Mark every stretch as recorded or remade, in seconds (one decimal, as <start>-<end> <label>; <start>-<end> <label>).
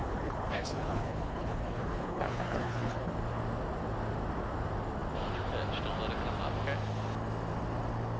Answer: 0.0-3.1 remade; 3.1-8.2 recorded